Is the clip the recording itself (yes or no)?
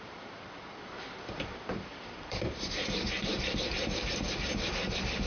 no